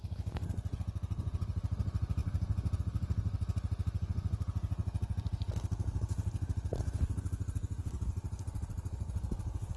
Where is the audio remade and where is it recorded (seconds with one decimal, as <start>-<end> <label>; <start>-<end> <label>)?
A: 0.0-9.8 recorded